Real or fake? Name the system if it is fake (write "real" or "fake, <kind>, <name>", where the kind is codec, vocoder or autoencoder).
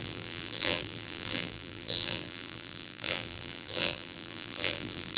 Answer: fake, vocoder, BigVGAN v2